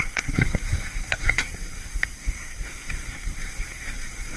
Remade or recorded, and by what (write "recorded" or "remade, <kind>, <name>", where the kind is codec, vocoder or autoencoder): remade, codec, SNAC